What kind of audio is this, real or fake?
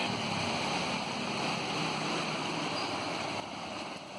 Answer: real